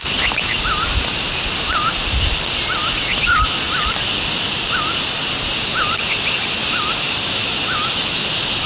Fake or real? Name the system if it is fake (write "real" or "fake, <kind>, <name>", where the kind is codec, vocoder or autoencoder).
real